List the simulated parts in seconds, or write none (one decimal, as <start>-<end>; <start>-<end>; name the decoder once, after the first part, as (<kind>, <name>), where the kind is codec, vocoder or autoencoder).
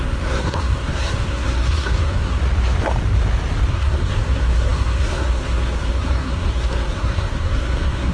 0.0-2.4 (codec, SNAC); 3.7-8.1